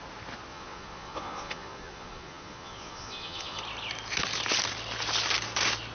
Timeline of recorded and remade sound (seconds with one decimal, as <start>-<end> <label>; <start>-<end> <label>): 0.0-0.5 recorded; 0.5-3.6 remade; 3.6-5.9 recorded